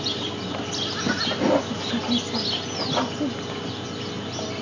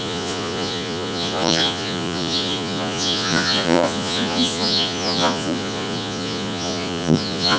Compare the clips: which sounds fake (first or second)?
second